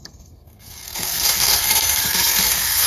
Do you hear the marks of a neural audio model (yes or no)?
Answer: yes